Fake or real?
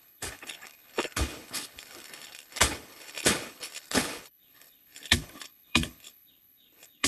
fake